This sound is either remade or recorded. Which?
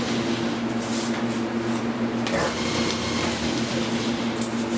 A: recorded